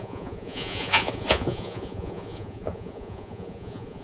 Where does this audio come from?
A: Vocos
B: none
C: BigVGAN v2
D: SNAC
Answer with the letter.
A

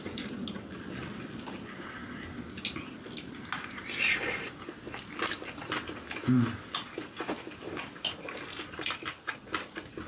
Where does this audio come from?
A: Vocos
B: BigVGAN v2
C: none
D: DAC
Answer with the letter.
C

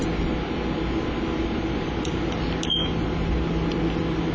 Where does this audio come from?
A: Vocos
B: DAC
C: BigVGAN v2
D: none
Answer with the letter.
D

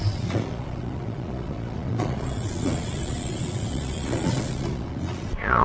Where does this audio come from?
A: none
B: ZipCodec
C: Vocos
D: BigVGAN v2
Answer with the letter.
C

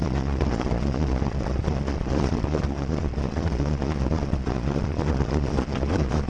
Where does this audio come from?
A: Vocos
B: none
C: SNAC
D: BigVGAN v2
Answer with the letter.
A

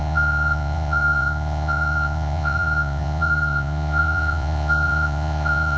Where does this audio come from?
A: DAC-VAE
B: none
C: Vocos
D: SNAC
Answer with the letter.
C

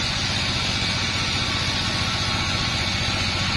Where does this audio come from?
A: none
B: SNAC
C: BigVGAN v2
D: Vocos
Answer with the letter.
D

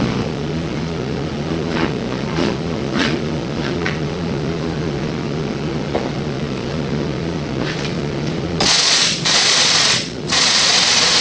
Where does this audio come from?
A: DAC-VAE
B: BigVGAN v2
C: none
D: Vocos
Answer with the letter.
D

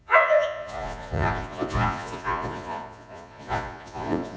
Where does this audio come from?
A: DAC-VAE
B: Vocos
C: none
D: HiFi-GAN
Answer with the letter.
B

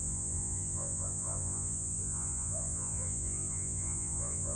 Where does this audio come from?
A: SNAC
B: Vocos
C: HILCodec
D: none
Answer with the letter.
B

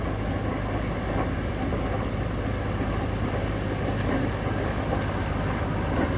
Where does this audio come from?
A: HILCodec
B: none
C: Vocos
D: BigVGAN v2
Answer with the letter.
B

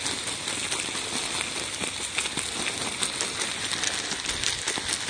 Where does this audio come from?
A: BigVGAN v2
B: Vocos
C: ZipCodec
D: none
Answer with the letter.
D